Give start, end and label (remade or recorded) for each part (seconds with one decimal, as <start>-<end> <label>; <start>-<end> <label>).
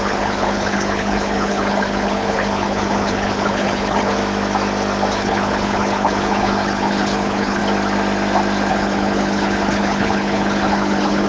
0.0-4.2 remade; 4.2-5.1 recorded; 5.1-7.6 remade; 7.6-8.7 recorded; 8.7-11.3 remade